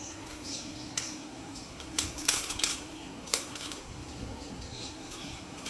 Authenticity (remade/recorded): remade